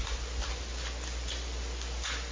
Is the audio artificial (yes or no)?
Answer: no